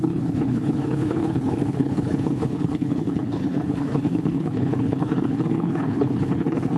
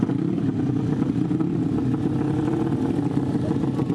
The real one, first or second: second